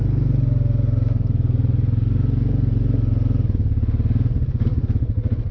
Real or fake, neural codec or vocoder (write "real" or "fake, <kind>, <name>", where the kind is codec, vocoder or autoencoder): real